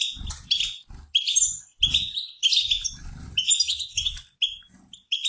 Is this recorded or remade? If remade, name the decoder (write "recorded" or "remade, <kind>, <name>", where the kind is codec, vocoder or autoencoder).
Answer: recorded